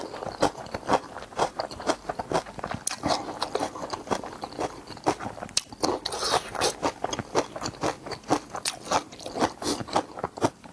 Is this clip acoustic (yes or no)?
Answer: yes